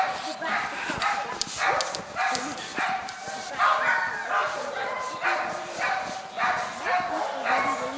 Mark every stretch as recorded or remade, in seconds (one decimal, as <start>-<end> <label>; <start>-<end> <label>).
0.0-2.7 recorded; 2.7-3.3 remade; 3.3-4.4 recorded; 4.4-6.1 remade; 6.1-8.0 recorded